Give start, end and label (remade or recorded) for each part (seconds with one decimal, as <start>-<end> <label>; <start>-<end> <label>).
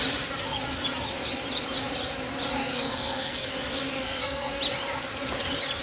0.0-2.6 recorded; 2.6-3.5 remade; 3.5-4.0 recorded; 4.0-4.6 remade; 4.6-5.8 recorded